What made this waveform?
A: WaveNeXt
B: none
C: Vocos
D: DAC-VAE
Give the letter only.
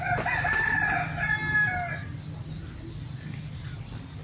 B